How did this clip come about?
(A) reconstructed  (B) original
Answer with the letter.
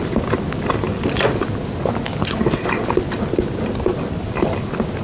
B